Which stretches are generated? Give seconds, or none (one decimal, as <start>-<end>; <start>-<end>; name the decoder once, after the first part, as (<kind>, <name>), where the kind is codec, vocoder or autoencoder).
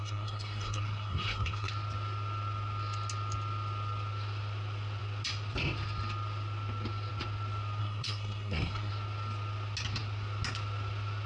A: 0.0-1.7 (codec, SNAC); 7.8-8.9